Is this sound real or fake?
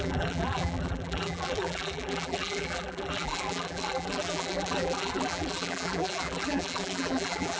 fake